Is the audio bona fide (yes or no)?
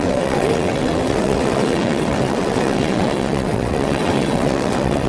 no